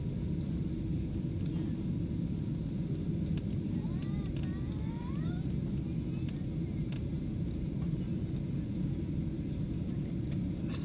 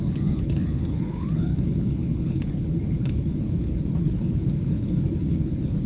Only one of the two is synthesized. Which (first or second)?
second